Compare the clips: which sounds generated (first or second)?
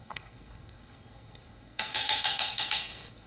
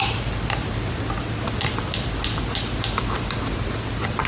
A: first